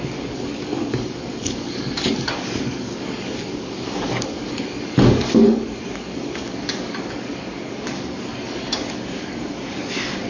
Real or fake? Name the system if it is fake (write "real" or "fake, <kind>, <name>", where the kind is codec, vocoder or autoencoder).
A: fake, codec, DAC